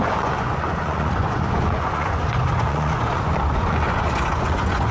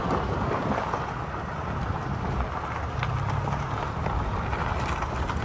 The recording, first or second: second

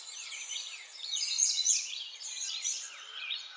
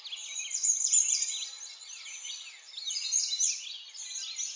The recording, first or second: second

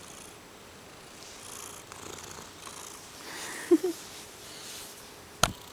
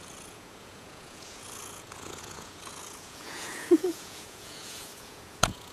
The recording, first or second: first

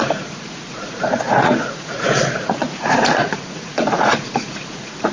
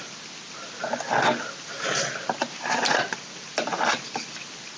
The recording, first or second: second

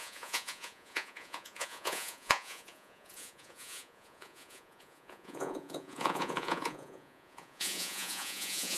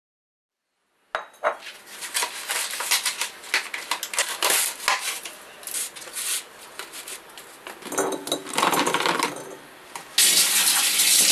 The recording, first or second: second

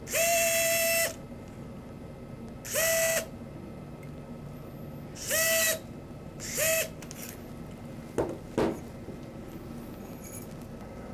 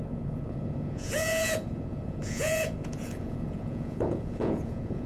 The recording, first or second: first